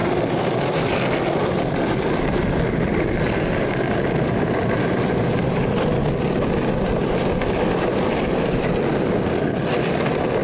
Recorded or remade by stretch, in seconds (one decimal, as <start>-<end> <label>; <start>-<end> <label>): 0.0-10.4 recorded